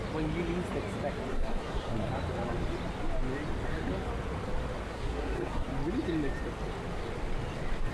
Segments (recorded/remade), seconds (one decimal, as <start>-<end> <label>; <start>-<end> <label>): 0.0-1.3 recorded; 1.3-2.1 remade; 2.1-4.9 recorded; 4.9-5.7 remade; 5.7-7.9 recorded